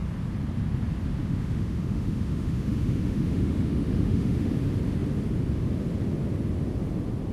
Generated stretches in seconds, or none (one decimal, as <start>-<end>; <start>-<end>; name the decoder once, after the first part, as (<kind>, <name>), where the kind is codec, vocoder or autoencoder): 1.2-4.5 (autoencoder, DAC-VAE)